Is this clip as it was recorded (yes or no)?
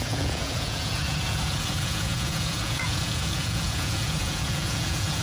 no